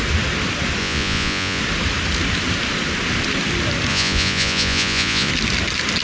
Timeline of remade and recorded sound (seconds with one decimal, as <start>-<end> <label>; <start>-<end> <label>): 0.0-0.8 recorded; 0.8-1.6 remade; 1.6-3.9 recorded; 3.9-5.3 remade; 5.3-6.0 recorded